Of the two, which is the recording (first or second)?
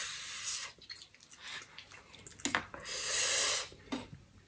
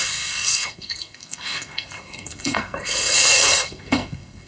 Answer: first